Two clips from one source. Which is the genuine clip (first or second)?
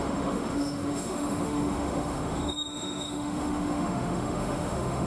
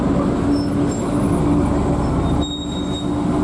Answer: second